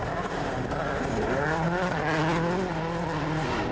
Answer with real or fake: real